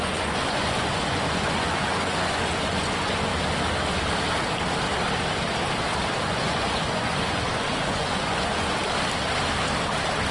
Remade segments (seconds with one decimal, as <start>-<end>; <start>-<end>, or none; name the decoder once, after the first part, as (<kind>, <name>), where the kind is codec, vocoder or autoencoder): 0.0-3.3 (vocoder, Vocos); 6.2-8.8